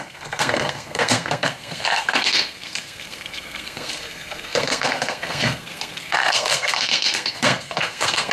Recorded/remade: remade